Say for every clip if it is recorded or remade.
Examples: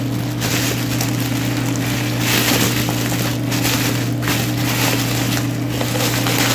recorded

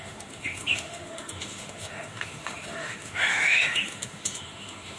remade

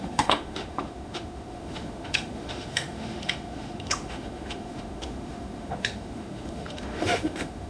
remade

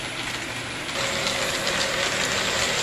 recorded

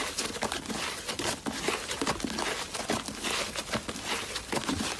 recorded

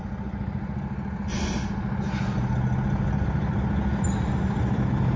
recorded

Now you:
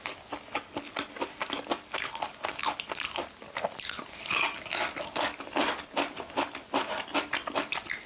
recorded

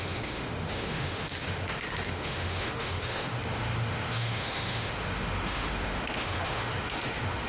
remade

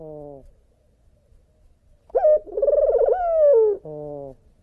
recorded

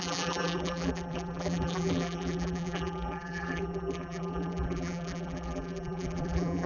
remade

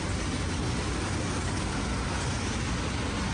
recorded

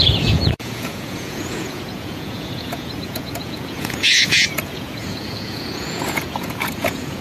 remade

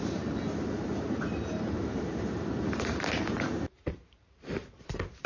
remade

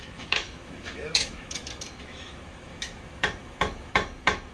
remade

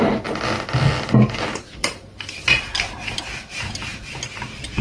recorded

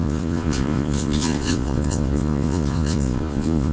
remade